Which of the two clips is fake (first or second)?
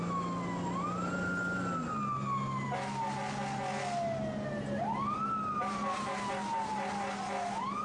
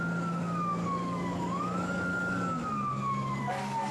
second